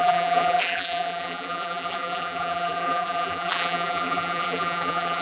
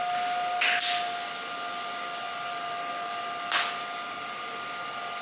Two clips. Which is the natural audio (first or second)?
second